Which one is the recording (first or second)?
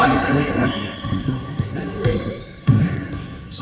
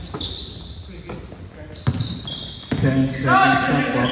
second